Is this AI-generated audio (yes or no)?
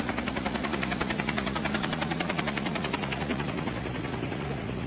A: yes